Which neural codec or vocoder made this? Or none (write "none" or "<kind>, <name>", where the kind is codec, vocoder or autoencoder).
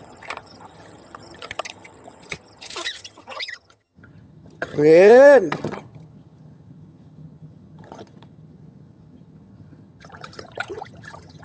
vocoder, HiFi-GAN